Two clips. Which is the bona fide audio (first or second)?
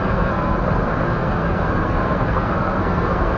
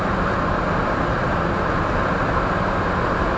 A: second